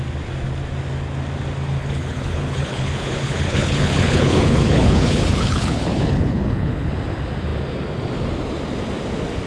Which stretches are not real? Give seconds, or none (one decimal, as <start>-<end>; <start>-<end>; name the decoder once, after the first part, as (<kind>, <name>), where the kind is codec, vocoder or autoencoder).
1.8-6.9 (codec, HILCodec)